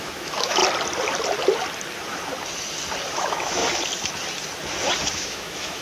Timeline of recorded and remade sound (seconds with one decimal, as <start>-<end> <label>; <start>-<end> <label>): 0.0-0.6 remade; 0.6-3.1 recorded; 3.1-3.6 remade; 3.6-5.1 recorded; 5.1-5.8 remade